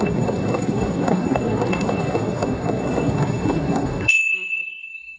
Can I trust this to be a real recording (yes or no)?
no